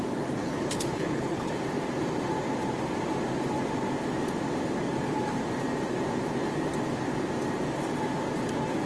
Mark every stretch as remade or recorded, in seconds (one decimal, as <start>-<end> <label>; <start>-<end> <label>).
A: 0.0-0.4 recorded; 0.4-1.5 remade; 1.5-8.9 recorded